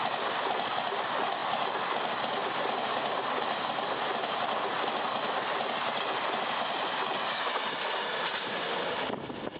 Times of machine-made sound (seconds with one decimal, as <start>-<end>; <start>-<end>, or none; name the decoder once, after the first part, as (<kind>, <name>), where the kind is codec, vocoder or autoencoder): none